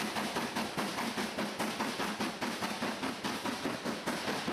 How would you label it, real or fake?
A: real